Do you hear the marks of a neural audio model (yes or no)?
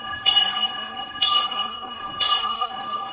yes